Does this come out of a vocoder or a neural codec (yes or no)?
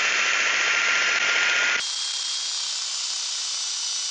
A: no